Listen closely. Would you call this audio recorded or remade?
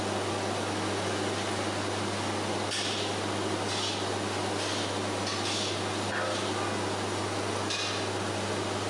recorded